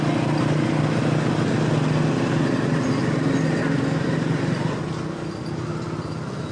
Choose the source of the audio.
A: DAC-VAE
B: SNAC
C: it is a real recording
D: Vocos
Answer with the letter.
C